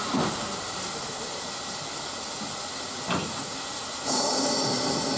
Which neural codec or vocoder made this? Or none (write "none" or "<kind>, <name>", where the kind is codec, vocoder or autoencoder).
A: none